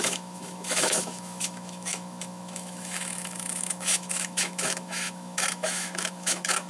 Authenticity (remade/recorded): remade